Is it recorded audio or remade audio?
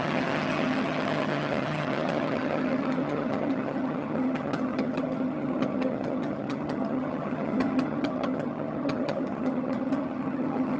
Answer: remade